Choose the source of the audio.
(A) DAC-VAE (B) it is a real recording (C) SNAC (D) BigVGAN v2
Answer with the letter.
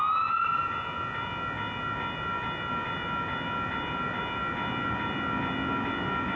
B